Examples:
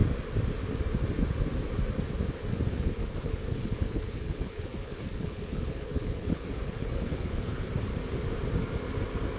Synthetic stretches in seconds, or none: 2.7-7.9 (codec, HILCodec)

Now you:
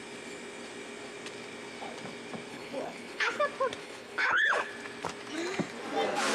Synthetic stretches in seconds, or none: 2.5-3.4 (codec, HILCodec); 3.8-4.7

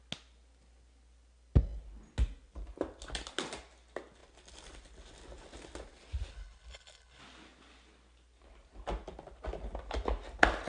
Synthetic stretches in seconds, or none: 6.3-7.2 (codec, HILCodec)

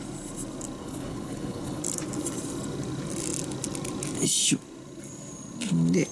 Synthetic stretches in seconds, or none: 0.8-1.8 (codec, HILCodec)

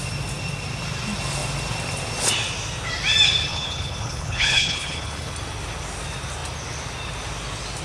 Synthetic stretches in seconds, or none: 3.5-5.3 (codec, HILCodec)